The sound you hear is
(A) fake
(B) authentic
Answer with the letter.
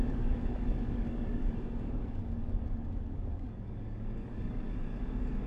A